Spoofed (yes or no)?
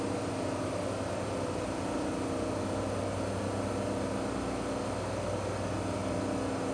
no